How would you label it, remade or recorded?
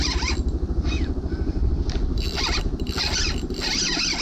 recorded